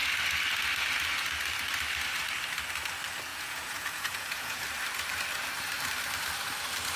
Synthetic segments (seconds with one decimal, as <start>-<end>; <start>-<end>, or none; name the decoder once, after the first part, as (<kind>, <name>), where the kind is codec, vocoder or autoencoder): 3.3-4.6 (vocoder, Vocos)